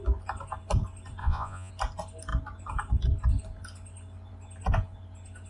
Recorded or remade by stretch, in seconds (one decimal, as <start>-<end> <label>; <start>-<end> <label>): 0.0-1.2 recorded; 1.2-1.7 remade; 1.7-5.5 recorded